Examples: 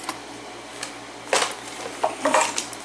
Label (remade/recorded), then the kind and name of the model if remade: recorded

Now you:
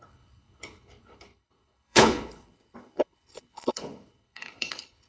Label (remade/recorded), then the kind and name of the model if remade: remade, codec, HILCodec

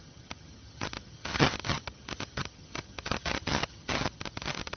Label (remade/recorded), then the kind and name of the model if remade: remade, vocoder, HiFi-GAN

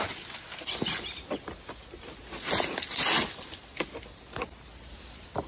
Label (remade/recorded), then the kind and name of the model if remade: recorded